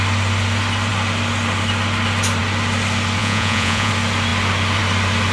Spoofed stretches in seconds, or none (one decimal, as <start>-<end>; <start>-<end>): 3.2-3.9